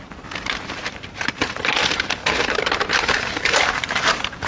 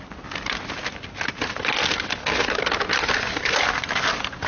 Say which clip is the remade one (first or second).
first